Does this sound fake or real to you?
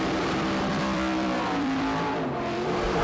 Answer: fake